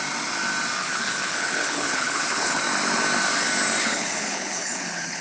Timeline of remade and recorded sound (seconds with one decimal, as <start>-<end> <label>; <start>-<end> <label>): 0.0-0.8 recorded; 0.8-2.6 remade; 2.6-3.8 recorded; 3.8-5.2 remade